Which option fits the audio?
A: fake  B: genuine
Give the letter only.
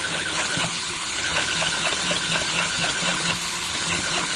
A